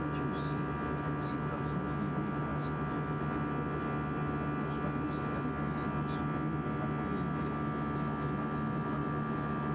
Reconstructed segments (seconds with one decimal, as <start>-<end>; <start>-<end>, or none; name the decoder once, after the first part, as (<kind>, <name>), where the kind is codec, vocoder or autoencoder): none